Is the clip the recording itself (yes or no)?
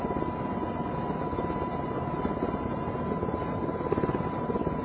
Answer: yes